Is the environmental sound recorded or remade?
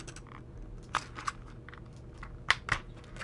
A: recorded